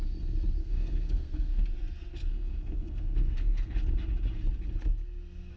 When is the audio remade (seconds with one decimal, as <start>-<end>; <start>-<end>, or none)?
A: 0.6-1.6; 2.3-3.8